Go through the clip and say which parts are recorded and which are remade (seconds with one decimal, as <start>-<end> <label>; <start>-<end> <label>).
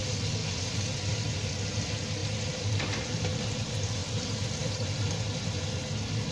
0.0-6.3 recorded